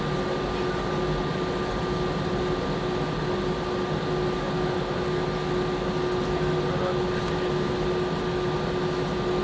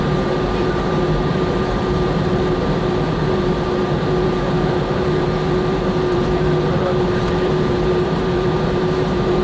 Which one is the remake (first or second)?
second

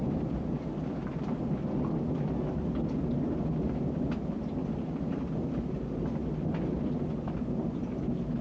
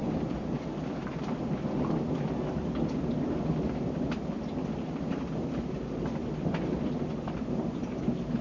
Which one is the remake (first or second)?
second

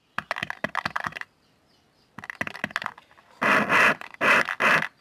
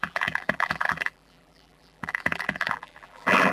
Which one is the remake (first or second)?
second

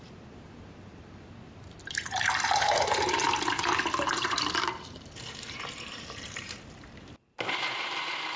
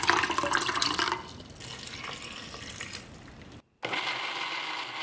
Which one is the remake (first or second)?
first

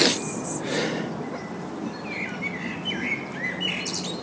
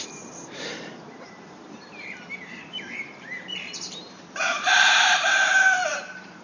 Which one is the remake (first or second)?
second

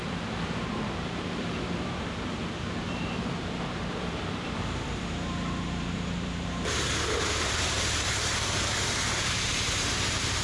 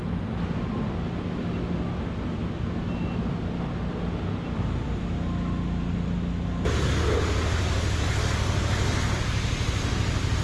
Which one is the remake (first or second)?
first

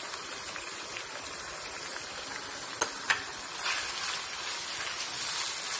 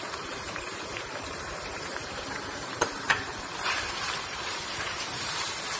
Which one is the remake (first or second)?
second